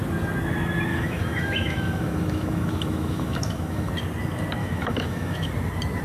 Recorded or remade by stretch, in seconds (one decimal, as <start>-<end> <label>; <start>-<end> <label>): 0.0-0.9 recorded; 0.9-3.9 remade; 3.9-4.6 recorded; 4.6-5.5 remade; 5.5-6.0 recorded